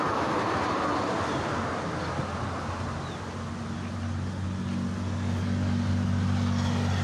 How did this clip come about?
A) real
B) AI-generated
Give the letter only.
A